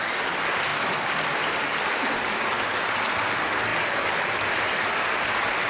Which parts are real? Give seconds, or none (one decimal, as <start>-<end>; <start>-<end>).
0.0-5.7